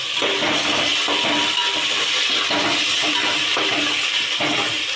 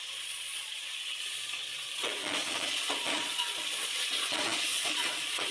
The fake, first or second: second